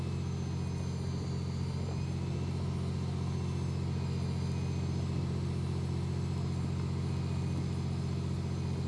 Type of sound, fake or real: real